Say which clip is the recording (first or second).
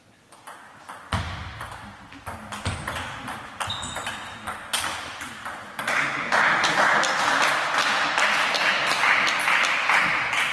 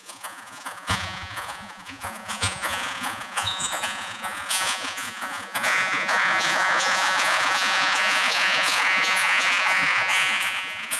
first